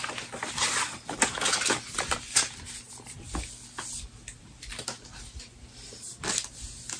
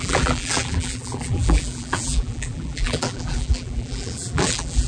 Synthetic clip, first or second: second